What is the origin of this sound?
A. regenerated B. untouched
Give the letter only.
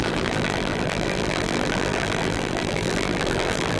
A